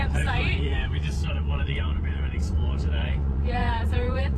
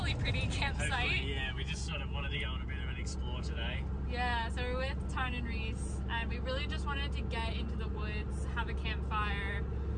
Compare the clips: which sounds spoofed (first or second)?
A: first